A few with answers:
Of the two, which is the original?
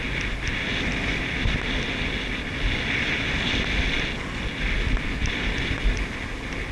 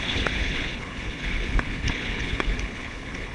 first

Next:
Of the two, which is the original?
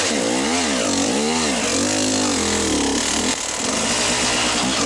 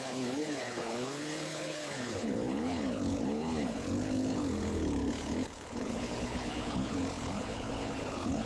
first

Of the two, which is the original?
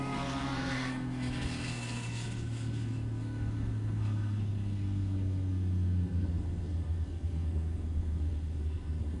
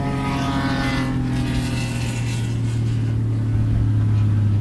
second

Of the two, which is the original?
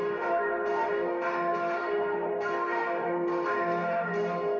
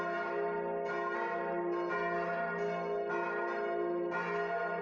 second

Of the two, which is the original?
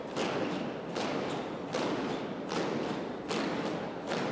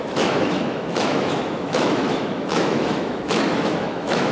first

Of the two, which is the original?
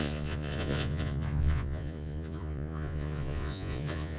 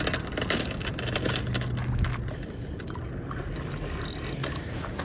second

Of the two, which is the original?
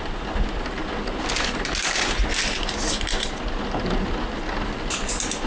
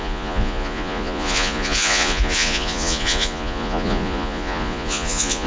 first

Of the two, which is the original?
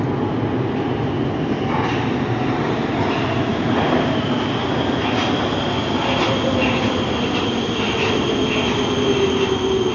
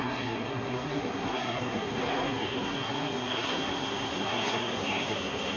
first